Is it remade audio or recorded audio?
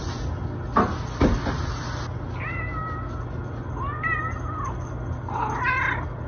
recorded